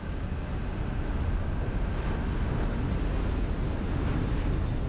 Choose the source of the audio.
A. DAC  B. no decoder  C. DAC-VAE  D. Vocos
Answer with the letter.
B